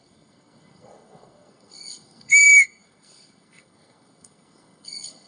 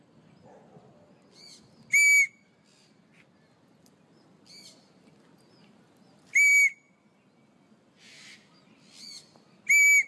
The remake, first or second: first